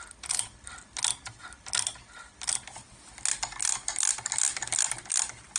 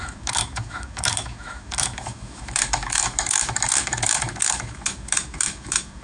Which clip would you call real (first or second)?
first